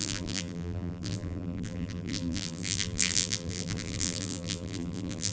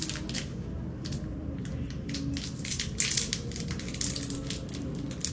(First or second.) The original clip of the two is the second